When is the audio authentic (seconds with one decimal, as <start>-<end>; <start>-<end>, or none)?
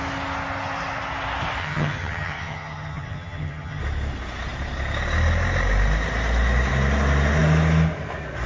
0.0-1.6; 3.8-8.5